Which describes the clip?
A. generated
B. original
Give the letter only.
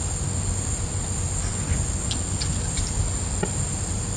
B